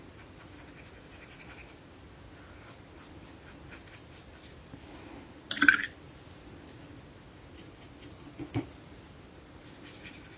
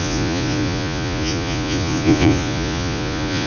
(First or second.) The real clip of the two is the first